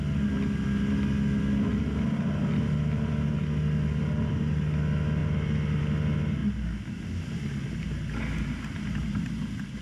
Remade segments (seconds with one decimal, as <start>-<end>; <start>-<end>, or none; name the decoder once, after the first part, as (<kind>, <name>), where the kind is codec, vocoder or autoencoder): none

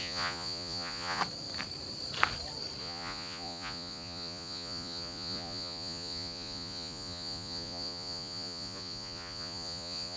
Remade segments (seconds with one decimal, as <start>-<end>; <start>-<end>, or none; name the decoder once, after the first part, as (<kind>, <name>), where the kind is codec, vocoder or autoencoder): 0.0-1.2 (vocoder, Vocos); 2.8-10.2

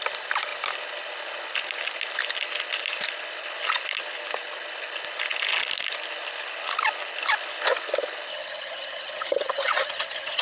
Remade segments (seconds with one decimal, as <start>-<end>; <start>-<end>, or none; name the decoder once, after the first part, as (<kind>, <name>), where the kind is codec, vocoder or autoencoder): 8.3-10.4 (vocoder, HiFi-GAN)